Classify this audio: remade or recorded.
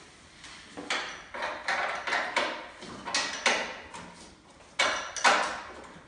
recorded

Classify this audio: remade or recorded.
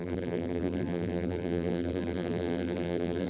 remade